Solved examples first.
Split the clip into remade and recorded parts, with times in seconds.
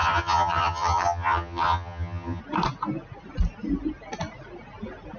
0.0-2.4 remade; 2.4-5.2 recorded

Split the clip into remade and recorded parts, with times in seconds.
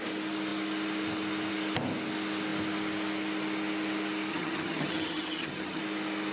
0.0-4.3 recorded; 4.3-5.8 remade; 5.8-6.3 recorded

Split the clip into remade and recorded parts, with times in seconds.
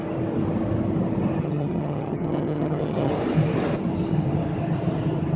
0.0-1.4 recorded; 1.4-3.1 remade; 3.1-5.4 recorded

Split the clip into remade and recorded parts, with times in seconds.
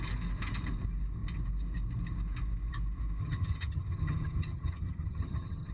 0.0-3.2 recorded; 3.2-5.7 remade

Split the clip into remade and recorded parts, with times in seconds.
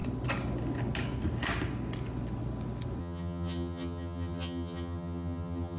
0.0-3.0 recorded; 3.0-5.8 remade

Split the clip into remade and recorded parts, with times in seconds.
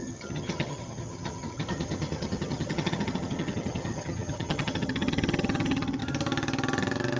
0.0-6.0 remade; 6.0-7.2 recorded